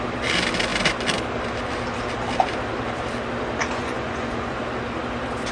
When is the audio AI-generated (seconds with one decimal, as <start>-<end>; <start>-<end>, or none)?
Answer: 3.6-4.6

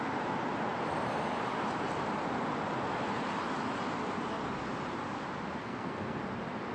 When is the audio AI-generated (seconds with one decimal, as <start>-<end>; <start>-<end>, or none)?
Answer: 5.6-6.2

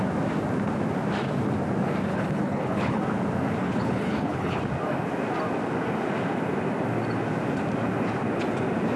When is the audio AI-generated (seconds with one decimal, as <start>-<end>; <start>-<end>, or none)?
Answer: 2.1-3.0; 3.6-4.6

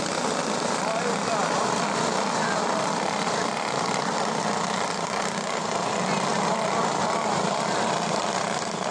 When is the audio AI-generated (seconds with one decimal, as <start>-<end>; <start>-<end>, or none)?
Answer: none

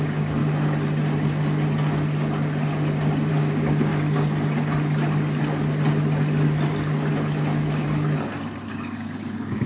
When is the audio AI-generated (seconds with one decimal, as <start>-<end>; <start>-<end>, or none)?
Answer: 0.0-0.4; 3.3-3.9; 8.7-9.7